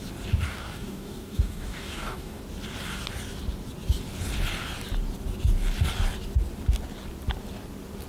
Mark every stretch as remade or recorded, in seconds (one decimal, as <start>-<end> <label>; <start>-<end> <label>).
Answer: 0.0-0.5 recorded; 0.5-2.4 remade; 2.4-8.1 recorded